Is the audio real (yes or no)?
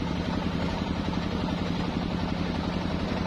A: no